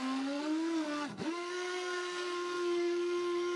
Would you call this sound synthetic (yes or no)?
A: yes